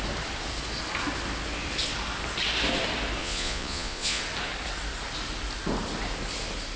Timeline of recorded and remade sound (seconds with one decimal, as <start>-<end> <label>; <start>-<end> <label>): 0.0-3.2 recorded; 3.2-4.2 remade; 4.2-6.8 recorded